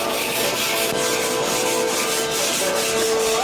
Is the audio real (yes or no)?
yes